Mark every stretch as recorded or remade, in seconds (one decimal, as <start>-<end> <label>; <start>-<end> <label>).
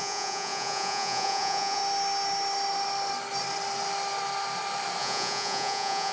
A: 0.0-1.8 remade; 1.8-5.0 recorded; 5.0-6.1 remade